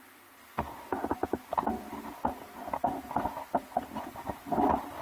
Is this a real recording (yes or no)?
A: yes